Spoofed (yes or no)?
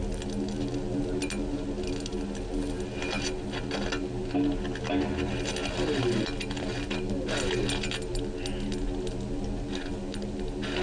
no